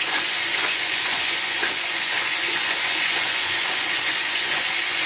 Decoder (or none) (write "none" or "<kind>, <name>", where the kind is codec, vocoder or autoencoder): vocoder, Vocos